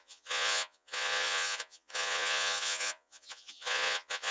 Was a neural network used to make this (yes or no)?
yes